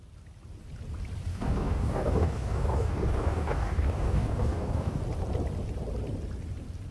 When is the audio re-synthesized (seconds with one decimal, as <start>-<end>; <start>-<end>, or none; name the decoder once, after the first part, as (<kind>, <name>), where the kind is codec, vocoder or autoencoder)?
1.3-5.0 (codec, DAC)